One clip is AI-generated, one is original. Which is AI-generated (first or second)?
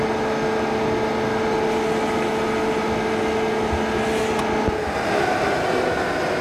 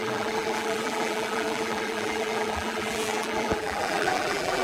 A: second